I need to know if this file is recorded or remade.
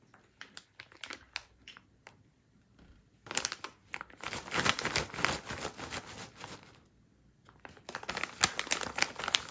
recorded